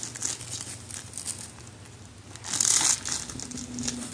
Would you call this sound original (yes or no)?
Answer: yes